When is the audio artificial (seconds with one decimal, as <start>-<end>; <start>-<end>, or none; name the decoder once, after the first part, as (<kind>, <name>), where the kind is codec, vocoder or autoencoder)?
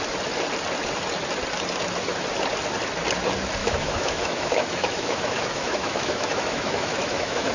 3.6-7.5 (autoencoder, DAC-VAE)